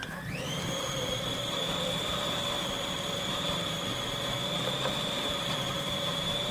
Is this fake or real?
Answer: fake